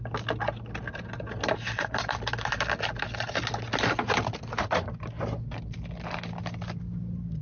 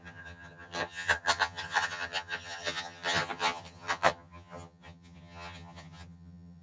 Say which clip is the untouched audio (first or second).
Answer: first